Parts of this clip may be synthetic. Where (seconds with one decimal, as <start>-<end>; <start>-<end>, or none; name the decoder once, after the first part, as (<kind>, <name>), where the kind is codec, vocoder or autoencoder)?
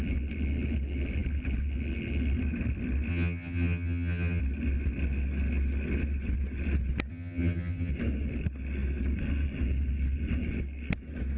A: 3.1-4.4 (vocoder, HiFi-GAN); 7.1-7.9